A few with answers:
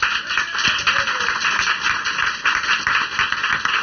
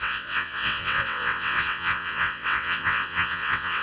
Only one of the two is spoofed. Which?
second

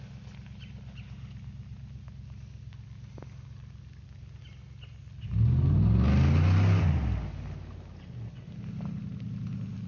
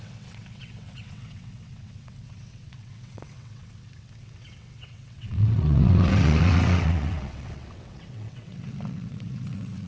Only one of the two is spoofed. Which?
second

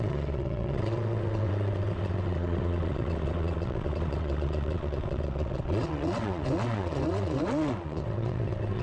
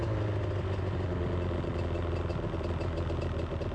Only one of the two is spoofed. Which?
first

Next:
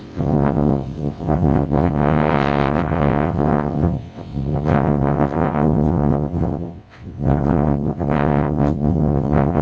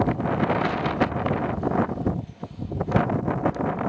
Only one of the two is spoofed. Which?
first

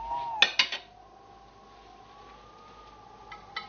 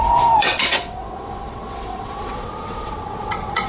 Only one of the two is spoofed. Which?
second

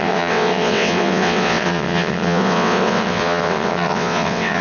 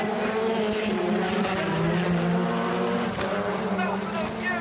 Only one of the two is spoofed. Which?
first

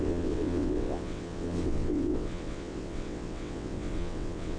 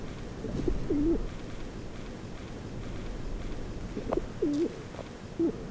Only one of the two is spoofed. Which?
first